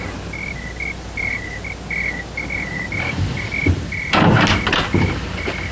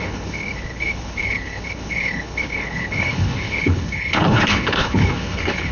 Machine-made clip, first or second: second